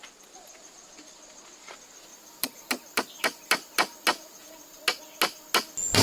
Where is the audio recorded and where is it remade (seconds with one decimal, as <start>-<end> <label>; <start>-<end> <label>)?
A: 0.0-2.1 recorded; 2.1-4.4 remade; 4.4-6.0 recorded